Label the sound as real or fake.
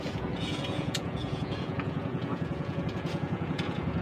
fake